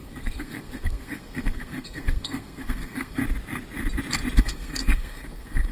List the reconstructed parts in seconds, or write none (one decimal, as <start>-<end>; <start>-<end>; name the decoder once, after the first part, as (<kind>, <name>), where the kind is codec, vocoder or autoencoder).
0.0-3.2 (codec, SNAC); 4.4-5.7